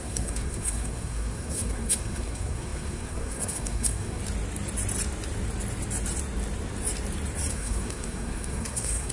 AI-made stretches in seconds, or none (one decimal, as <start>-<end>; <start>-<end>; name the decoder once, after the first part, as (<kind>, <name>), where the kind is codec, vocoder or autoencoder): 0.0-4.2 (codec, SNAC); 7.5-9.1